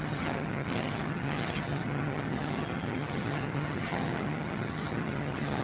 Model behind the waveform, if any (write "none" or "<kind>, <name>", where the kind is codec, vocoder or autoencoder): vocoder, HiFi-GAN